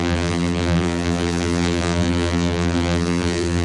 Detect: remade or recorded remade